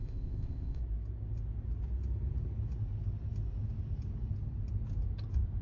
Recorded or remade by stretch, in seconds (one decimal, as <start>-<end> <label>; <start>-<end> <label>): 0.0-0.8 remade; 0.8-5.6 recorded